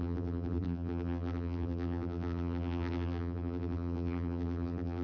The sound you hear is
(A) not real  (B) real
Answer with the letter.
A